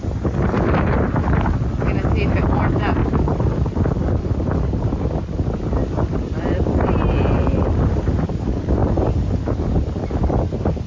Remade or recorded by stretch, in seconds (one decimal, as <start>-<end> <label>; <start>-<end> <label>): 0.0-3.0 recorded; 3.0-4.8 remade; 4.8-5.8 recorded; 5.8-6.6 remade; 6.6-10.9 recorded